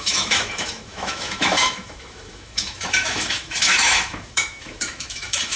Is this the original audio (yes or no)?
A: no